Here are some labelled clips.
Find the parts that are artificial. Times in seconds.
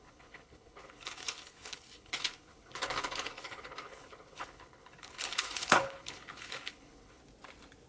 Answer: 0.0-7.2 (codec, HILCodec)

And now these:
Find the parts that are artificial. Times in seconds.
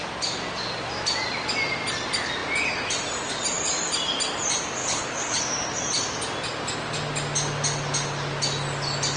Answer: 4.8-5.4 (codec, HILCodec)